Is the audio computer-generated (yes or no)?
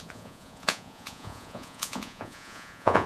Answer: yes